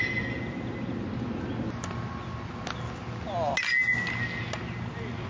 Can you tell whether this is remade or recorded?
recorded